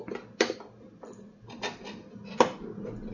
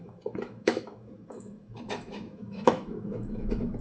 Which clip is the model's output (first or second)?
second